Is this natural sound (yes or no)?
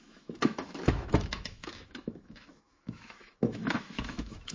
no